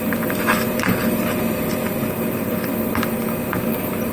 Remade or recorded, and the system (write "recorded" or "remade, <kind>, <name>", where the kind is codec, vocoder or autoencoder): recorded